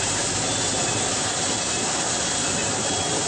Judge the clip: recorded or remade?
recorded